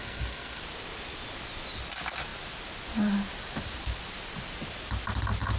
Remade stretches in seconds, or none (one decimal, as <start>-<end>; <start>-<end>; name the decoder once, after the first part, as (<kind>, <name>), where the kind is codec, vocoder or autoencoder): 0.0-0.6 (codec, SNAC)